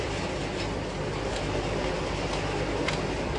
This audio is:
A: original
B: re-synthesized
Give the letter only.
A